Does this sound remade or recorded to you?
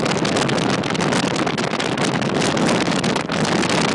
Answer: recorded